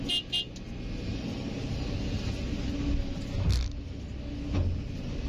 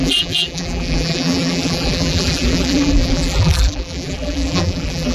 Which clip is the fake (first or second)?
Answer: second